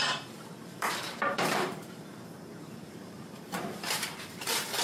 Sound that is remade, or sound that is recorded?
remade